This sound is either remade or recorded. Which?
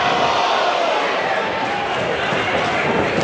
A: recorded